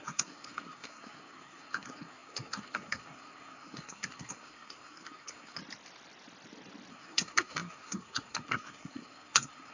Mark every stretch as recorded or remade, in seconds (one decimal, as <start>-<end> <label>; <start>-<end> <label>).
0.0-5.6 remade; 5.6-6.9 recorded; 6.9-9.7 remade